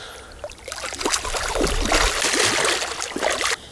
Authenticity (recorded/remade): recorded